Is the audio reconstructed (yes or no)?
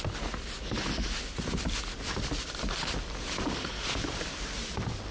no